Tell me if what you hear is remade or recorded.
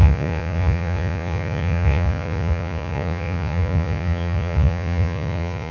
remade